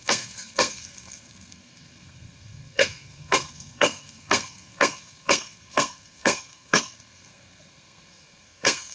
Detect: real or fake fake